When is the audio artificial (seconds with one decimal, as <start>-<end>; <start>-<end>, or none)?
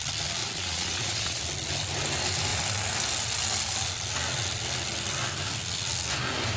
0.4-1.4